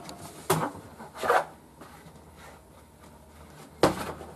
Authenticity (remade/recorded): recorded